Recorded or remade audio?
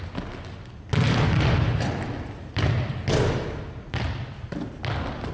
recorded